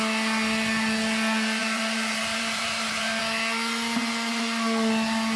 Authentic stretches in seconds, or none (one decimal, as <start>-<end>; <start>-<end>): 0.0-1.6; 3.2-5.4